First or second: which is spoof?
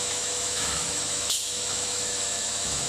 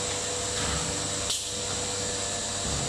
first